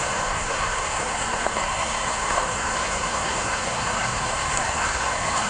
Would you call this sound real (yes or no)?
no